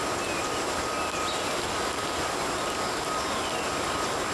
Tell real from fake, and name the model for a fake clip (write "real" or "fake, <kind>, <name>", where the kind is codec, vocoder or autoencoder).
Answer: real